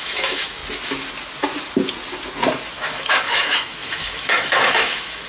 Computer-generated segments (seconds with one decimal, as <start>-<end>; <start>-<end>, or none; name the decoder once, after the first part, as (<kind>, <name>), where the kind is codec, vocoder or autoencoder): 0.0-0.6 (autoencoder, DAC-VAE); 2.7-5.3